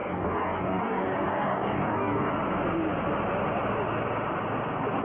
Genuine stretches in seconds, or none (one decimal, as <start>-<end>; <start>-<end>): 2.3-5.0